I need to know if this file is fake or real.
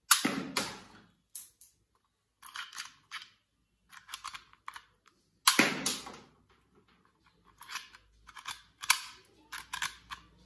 real